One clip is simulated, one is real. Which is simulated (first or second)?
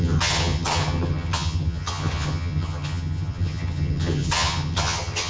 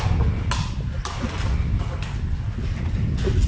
first